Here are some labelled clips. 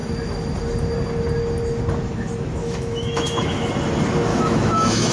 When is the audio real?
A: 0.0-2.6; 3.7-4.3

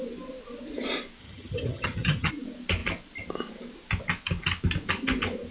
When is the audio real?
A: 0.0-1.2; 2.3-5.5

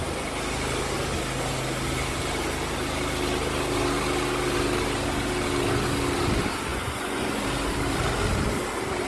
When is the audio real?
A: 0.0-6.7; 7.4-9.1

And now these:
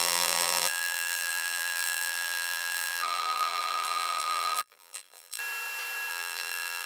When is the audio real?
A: 5.4-6.1

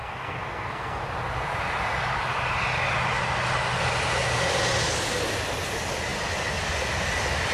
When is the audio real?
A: 1.0-7.5

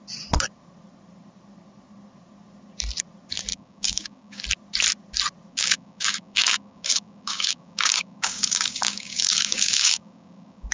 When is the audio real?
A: 0.0-3.5; 4.4-5.5